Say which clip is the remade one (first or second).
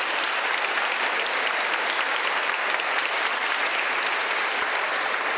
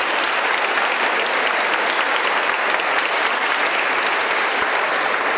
first